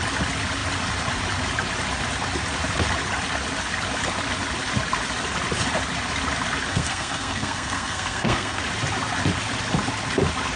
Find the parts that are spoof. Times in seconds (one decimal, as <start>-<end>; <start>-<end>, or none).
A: 6.7-8.6